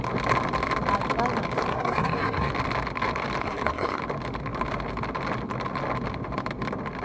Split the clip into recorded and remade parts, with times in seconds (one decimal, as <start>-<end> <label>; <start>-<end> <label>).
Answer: 0.0-1.7 recorded; 1.7-2.5 remade; 2.5-3.4 recorded; 3.4-4.0 remade; 4.0-7.0 recorded